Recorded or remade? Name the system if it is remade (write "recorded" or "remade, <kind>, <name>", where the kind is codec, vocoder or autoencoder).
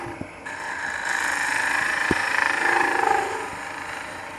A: remade, vocoder, BigVGAN v2